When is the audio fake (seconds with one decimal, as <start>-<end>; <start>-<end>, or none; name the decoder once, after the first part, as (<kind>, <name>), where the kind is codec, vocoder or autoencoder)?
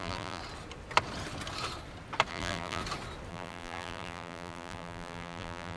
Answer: 0.0-0.4 (vocoder, BigVGAN v2); 2.3-2.8; 3.3-5.8